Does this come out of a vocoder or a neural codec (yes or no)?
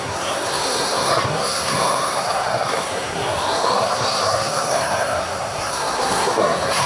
yes